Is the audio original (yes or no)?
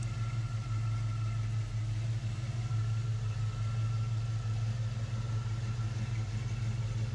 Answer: yes